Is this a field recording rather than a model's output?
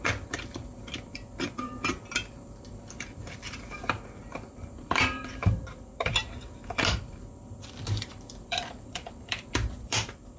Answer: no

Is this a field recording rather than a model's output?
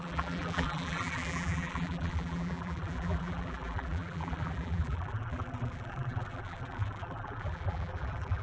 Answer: no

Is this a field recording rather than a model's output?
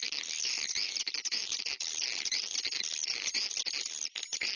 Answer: yes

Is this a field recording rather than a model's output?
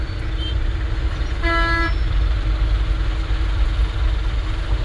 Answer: yes